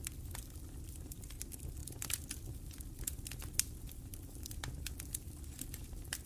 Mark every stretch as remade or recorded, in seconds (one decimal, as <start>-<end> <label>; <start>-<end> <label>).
0.0-6.3 recorded